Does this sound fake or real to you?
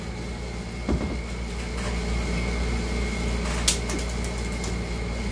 real